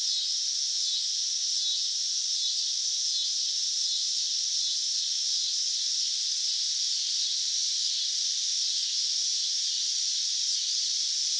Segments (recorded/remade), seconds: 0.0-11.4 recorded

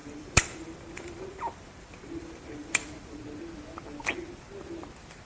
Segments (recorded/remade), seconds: 0.0-3.2 remade; 3.2-5.3 recorded

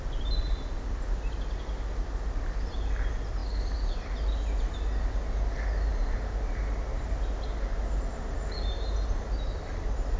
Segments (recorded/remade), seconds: 0.0-10.2 recorded

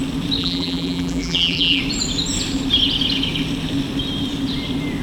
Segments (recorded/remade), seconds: 0.0-0.4 recorded; 0.4-1.8 remade; 1.8-5.0 recorded